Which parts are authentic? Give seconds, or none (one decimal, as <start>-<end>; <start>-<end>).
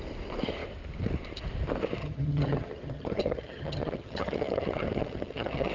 0.0-2.0